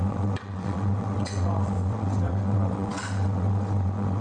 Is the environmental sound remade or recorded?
remade